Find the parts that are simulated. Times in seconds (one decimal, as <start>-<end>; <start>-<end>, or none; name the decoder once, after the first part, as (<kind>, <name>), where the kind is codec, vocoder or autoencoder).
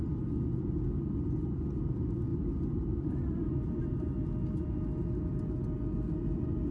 none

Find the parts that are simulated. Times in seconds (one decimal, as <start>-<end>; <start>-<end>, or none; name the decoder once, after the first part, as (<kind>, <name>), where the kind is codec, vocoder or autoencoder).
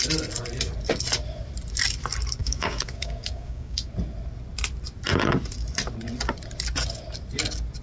2.4-3.9 (codec, DAC)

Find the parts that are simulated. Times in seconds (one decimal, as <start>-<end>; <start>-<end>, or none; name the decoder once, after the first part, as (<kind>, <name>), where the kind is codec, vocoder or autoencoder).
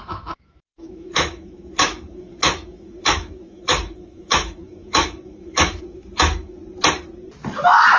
0.0-6.6 (autoencoder, DAC-VAE)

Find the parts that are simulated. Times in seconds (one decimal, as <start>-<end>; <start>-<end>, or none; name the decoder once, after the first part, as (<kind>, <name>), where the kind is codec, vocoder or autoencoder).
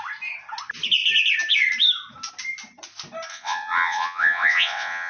3.3-5.1 (vocoder, WaveNeXt)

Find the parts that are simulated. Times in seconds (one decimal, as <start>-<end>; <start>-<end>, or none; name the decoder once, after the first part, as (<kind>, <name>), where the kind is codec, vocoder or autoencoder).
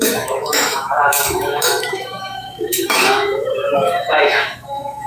0.0-5.1 (autoencoder, DAC-VAE)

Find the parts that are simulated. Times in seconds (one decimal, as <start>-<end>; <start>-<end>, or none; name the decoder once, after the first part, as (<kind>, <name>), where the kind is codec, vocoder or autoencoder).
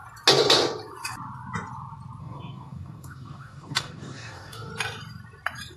2.2-4.7 (codec, DAC)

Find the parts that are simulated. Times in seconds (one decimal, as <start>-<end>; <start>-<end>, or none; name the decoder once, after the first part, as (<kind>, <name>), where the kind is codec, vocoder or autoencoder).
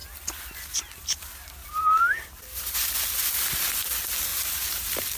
1.6-3.3 (vocoder, BigVGAN v2); 4.3-5.2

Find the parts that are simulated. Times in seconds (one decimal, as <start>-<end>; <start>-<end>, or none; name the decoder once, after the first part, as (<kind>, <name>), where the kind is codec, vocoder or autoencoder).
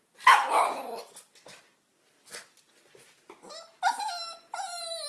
none